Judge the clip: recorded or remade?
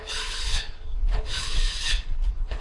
remade